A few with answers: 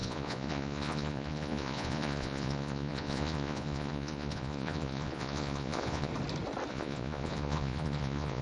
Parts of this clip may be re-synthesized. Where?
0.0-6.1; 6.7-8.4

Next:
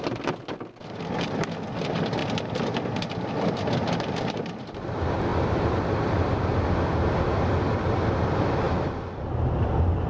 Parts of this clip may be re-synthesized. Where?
none